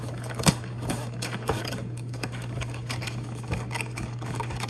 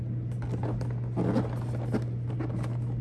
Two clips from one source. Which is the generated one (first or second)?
first